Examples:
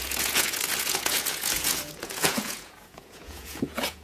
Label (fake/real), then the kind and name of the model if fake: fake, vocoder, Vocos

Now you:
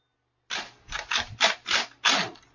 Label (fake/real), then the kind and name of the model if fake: real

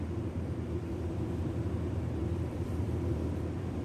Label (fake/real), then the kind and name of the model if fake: fake, vocoder, BigVGAN v2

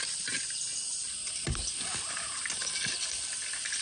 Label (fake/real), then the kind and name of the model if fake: real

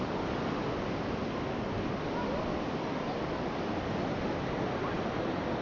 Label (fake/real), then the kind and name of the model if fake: real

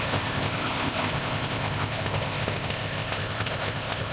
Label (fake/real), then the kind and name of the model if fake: fake, codec, ZipCodec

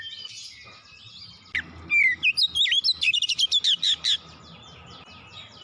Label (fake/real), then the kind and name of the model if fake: real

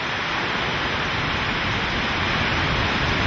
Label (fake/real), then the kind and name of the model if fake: real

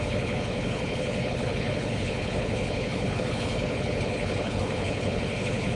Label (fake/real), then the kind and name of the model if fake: fake, codec, HILCodec